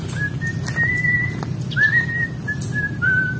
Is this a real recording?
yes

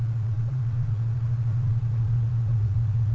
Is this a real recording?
no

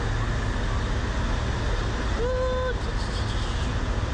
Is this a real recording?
yes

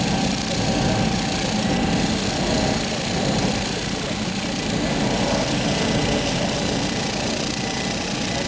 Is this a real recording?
yes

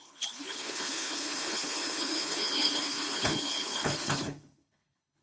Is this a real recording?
no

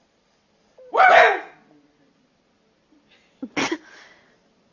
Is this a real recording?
yes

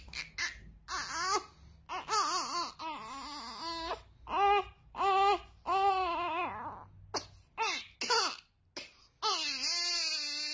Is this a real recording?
yes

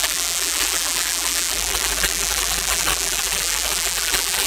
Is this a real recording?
no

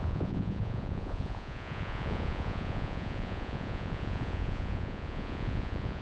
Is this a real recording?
no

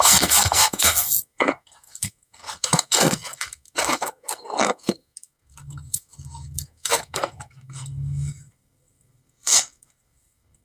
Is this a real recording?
no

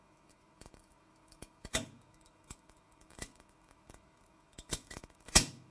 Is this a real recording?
no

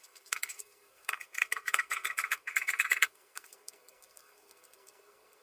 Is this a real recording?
no